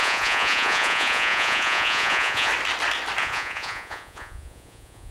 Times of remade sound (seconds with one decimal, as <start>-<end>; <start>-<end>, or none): 0.0-2.5; 3.2-5.1